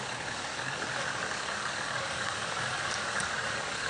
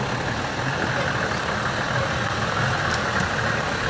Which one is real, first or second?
second